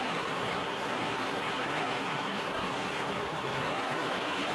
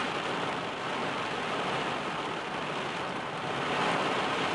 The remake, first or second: first